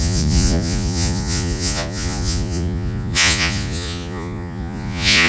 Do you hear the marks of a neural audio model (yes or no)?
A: yes